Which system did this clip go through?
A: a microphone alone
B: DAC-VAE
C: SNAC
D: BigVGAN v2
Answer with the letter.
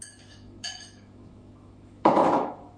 B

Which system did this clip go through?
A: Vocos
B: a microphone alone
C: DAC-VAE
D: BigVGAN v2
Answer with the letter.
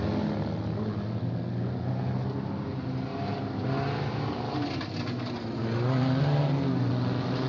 B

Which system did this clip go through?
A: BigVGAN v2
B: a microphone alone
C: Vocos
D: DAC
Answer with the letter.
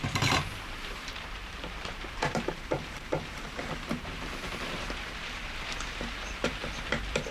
A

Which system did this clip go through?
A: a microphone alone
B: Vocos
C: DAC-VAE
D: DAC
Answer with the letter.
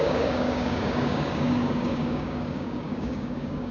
D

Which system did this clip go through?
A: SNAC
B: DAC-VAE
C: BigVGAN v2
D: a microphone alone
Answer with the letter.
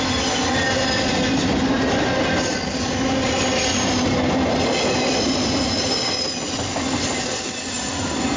D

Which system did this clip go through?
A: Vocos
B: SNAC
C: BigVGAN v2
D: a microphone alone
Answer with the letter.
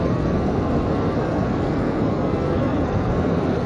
B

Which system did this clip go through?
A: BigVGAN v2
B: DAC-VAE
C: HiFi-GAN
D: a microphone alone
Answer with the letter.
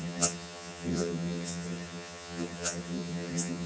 C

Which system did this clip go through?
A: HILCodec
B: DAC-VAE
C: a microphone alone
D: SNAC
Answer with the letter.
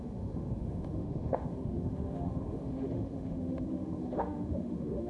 B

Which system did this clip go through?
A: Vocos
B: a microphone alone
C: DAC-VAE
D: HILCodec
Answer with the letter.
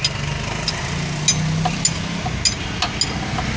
B